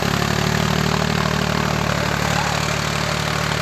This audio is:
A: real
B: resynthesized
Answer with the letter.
A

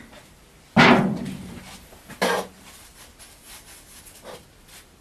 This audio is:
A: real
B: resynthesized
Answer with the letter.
A